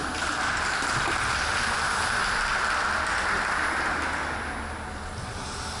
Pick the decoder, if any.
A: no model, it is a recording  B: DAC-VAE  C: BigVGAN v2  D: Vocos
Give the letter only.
A